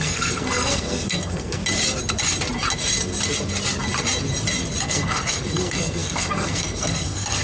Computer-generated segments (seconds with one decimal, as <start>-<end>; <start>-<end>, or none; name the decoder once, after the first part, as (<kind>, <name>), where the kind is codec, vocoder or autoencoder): 0.0-1.6 (codec, SNAC); 4.8-7.4